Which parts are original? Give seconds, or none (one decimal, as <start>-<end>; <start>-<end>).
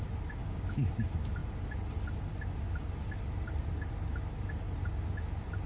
0.0-0.4; 0.9-5.7